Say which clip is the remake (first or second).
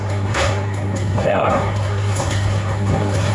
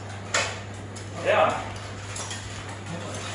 first